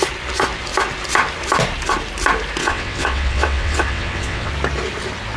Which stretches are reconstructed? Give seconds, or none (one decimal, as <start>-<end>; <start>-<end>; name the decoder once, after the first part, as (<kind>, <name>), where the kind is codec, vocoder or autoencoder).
2.6-4.5 (vocoder, WaveNeXt)